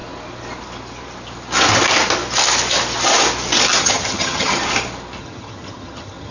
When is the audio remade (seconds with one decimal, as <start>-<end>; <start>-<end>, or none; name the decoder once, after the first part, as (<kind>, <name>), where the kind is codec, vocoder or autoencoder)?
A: 3.8-4.6 (vocoder, HiFi-GAN); 5.2-6.3